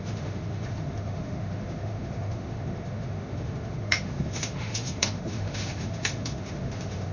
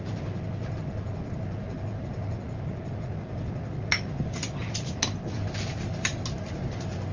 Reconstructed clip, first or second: first